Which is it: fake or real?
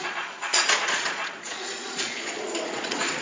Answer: fake